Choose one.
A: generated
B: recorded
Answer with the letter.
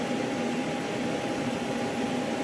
B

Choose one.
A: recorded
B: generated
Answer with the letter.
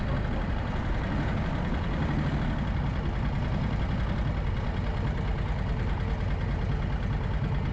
A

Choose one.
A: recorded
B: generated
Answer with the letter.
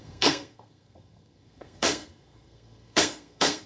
B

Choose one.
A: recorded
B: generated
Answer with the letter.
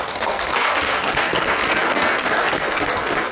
B